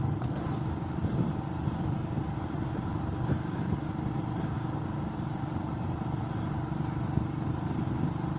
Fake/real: real